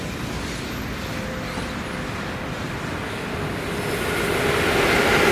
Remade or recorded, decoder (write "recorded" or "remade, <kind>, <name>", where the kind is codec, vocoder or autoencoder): recorded